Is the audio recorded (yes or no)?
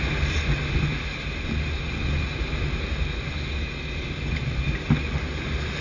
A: yes